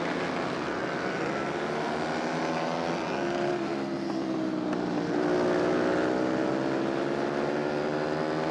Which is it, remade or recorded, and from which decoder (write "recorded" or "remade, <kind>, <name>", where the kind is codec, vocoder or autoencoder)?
recorded